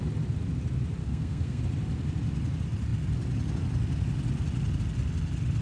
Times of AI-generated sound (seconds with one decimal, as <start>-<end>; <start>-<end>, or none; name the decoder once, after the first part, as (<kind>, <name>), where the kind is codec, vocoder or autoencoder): 1.0-1.6 (codec, SNAC)